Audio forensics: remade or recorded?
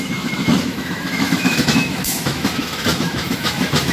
remade